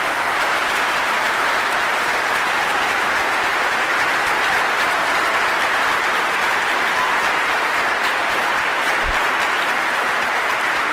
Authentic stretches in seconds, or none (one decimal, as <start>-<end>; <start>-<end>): 3.9-8.1; 8.8-9.7